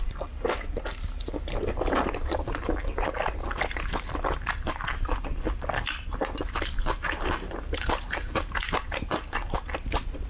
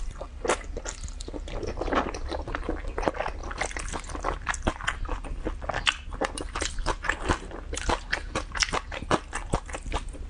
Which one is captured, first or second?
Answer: second